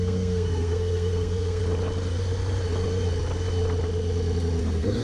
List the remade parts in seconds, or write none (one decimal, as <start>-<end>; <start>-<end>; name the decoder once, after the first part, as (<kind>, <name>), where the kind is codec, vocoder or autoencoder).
0.0-1.6 (codec, SNAC); 4.6-5.0